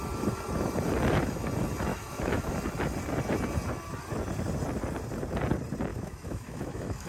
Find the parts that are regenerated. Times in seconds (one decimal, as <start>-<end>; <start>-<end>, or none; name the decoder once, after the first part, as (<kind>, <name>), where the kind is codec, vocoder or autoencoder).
1.9-2.5 (autoencoder, DAC-VAE); 5.9-7.1